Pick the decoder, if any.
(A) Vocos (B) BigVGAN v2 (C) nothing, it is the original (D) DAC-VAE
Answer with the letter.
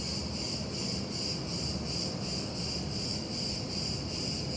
B